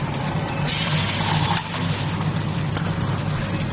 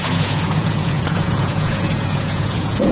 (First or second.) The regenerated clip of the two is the second